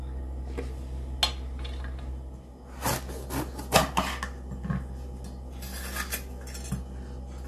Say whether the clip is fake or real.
real